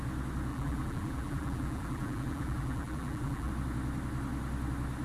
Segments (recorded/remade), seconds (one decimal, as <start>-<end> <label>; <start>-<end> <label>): 0.0-0.5 recorded; 0.5-3.5 remade; 3.5-5.0 recorded